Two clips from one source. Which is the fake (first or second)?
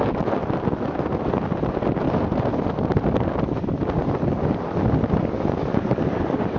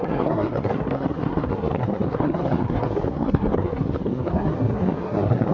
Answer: second